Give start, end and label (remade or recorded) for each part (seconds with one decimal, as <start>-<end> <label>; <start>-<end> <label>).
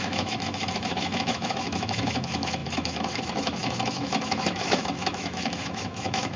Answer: 0.0-6.4 remade